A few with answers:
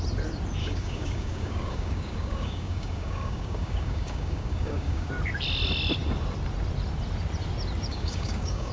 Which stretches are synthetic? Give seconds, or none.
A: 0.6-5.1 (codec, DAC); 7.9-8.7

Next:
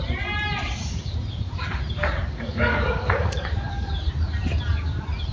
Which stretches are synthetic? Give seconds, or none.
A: 2.2-3.9 (codec, DAC)